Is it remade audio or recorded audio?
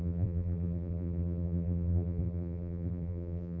remade